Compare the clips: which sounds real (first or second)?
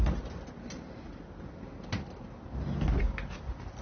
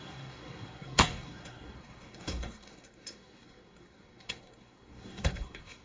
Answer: first